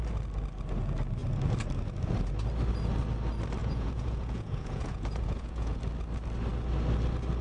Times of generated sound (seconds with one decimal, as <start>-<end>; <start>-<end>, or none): 3.6-5.8